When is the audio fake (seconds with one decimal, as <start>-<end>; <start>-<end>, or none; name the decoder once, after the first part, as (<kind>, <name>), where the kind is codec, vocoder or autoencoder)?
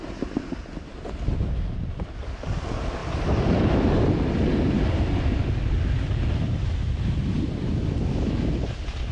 none